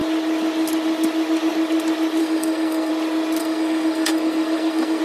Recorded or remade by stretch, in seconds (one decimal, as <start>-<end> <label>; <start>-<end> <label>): 0.0-2.2 recorded; 2.2-2.9 remade; 2.9-3.4 recorded; 3.4-5.0 remade